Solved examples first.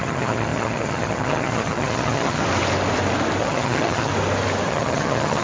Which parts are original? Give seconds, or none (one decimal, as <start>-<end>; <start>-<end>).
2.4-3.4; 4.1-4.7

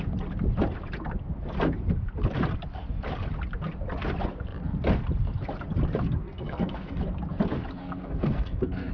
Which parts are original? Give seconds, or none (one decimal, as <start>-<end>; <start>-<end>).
0.0-6.2; 7.0-7.8

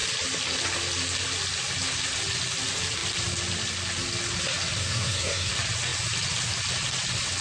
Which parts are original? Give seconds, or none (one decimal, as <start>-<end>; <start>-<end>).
0.0-4.8; 5.5-7.4

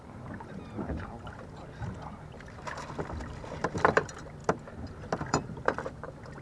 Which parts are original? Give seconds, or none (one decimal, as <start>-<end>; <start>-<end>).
1.6-2.2; 4.4-5.3

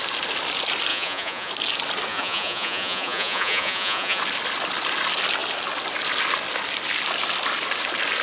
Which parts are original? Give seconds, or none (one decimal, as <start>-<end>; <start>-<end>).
0.0-0.9; 1.5-2.1; 4.2-8.2

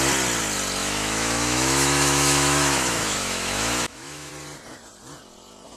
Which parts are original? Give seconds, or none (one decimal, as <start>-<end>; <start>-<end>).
0.0-0.8; 4.3-5.8

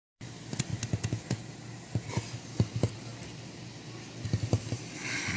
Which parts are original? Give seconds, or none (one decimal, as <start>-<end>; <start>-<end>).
0.0-5.4

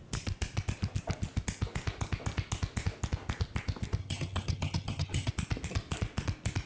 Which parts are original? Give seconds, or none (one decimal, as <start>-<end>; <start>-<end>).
0.0-4.0; 5.3-6.7